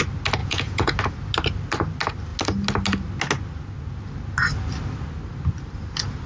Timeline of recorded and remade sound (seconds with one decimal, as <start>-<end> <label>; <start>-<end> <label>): 0.0-0.4 recorded; 0.4-1.0 remade; 1.0-6.3 recorded